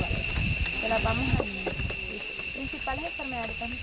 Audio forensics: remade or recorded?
recorded